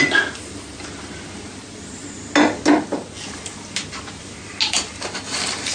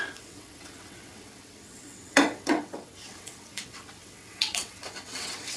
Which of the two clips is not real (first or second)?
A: second